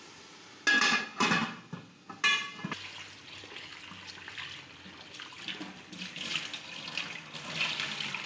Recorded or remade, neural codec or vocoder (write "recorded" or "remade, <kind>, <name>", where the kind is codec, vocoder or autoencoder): recorded